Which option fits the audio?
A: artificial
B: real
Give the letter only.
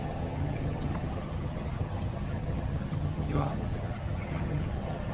A